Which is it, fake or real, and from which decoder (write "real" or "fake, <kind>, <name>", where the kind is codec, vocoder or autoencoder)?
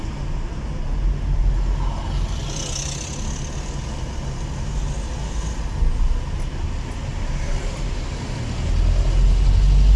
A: real